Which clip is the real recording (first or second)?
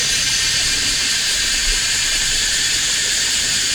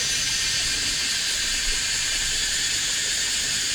second